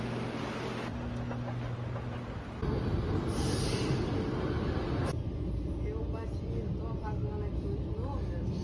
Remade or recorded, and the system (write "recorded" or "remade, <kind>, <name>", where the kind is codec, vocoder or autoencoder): recorded